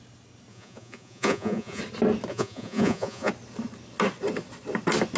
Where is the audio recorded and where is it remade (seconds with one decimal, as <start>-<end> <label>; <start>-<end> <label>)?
0.0-0.5 recorded; 0.5-1.8 remade; 1.8-2.3 recorded; 2.3-3.3 remade; 3.3-5.2 recorded